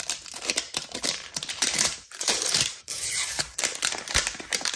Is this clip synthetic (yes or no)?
yes